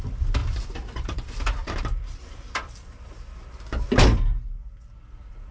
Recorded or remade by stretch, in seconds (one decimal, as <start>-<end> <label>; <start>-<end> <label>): 0.0-0.4 recorded; 0.4-3.3 remade; 3.3-5.5 recorded